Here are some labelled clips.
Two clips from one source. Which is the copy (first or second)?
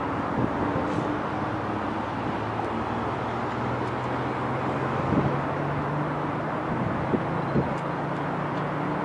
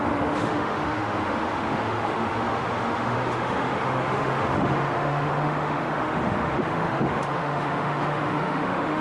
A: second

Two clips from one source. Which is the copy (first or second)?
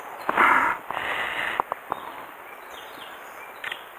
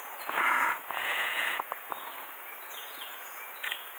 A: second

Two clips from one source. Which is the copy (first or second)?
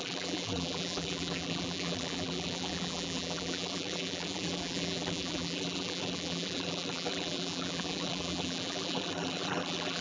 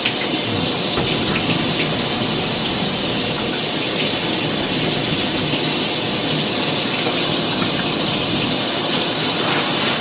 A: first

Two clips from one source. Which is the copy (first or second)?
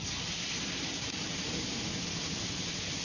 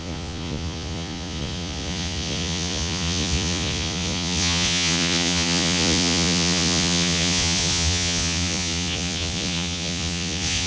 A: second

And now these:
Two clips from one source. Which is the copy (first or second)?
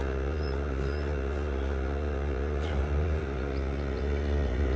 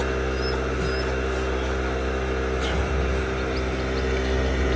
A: first